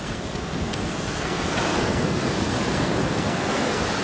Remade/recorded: remade